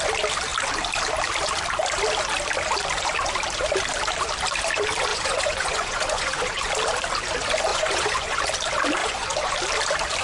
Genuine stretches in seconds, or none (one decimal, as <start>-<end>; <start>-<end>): 0.0-5.1; 6.7-7.7; 8.4-9.0; 9.5-10.2